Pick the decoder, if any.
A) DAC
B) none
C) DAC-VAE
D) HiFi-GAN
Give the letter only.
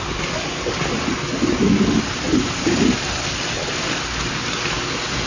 B